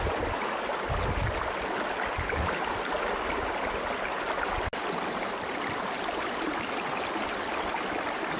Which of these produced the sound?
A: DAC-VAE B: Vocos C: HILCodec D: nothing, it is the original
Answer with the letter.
D